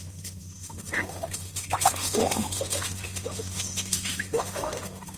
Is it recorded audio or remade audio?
remade